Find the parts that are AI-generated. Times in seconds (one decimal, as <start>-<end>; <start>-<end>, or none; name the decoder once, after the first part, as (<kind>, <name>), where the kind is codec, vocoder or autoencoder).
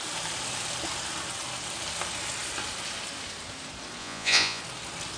4.0-4.6 (vocoder, Vocos)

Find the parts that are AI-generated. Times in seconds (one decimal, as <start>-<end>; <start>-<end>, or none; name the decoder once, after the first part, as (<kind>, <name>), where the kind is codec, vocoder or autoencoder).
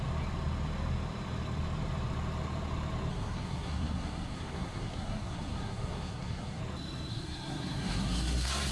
3.1-6.6 (codec, SNAC); 7.1-8.7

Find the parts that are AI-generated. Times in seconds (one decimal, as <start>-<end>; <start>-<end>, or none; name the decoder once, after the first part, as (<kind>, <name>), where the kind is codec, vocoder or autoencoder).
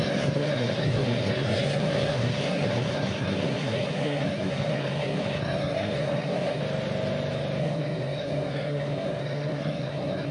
0.0-6.6 (codec, SNAC); 7.6-10.3